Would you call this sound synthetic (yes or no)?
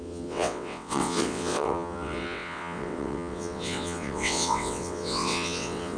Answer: yes